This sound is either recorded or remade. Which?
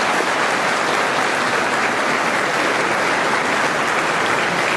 recorded